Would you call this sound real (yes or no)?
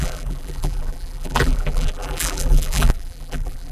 no